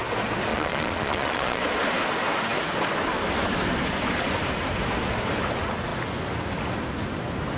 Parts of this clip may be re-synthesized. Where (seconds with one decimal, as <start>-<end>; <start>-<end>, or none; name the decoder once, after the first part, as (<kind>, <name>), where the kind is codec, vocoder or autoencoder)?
0.5-1.6 (vocoder, Vocos)